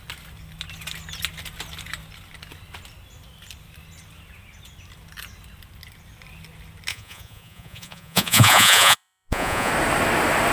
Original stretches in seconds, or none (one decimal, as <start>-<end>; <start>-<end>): 0.0-6.9; 9.7-10.5